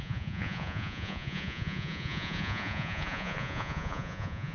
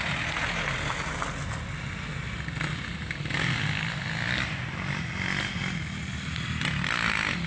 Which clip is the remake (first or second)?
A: first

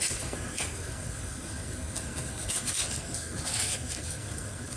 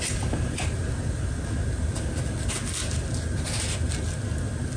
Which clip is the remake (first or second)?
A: first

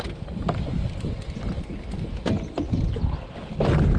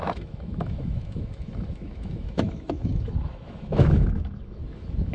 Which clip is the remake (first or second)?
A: second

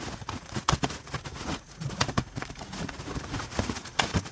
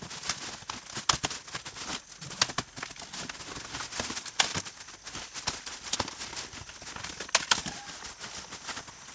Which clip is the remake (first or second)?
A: first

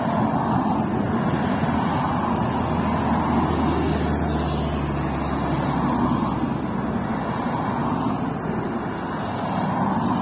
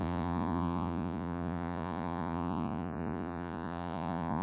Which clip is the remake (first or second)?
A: second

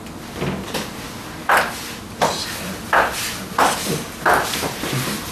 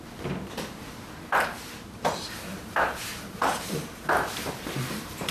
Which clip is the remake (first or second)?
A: second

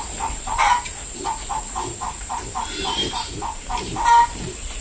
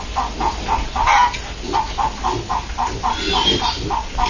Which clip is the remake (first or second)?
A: first